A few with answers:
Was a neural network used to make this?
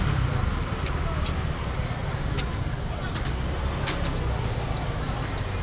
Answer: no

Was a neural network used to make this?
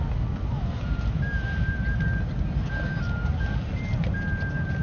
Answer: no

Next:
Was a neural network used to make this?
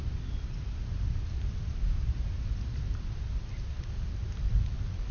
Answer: no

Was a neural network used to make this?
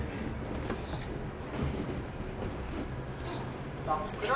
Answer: no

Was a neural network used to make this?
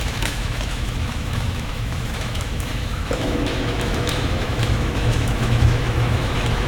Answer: yes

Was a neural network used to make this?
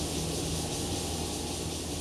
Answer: no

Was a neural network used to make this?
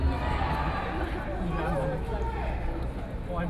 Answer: no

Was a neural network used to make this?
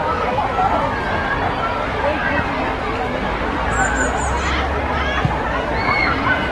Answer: no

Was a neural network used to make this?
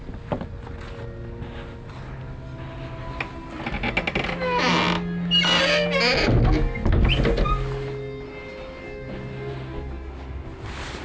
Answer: no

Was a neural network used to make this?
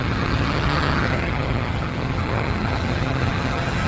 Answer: yes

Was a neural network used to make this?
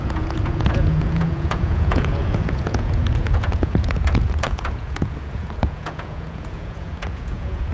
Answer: yes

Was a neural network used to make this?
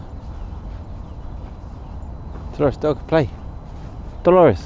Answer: no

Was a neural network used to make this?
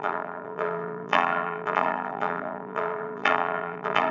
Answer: yes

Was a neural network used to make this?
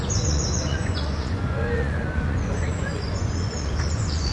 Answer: yes